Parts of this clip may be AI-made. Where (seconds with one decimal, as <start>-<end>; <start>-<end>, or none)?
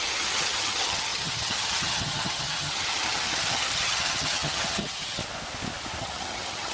0.0-5.2; 6.0-6.7